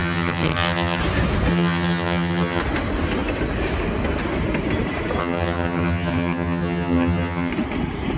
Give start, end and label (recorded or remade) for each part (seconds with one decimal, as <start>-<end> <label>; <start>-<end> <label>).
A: 0.0-1.0 remade; 1.0-1.5 recorded; 1.5-2.6 remade; 2.6-5.2 recorded; 5.2-7.5 remade; 7.5-8.2 recorded